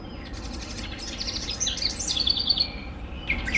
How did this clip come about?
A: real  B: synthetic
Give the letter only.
A